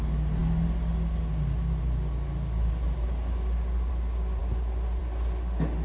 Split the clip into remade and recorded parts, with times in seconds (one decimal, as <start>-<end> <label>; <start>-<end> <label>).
0.0-5.8 recorded

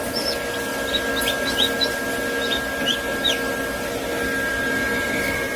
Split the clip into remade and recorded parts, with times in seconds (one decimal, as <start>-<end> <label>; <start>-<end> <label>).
0.0-5.6 recorded

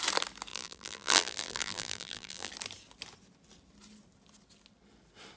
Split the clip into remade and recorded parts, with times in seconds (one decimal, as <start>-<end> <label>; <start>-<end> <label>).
0.0-0.5 recorded; 0.5-2.5 remade; 2.5-5.4 recorded

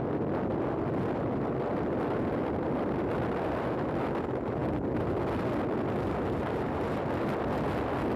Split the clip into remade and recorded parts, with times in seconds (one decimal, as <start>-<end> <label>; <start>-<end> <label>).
0.0-8.2 recorded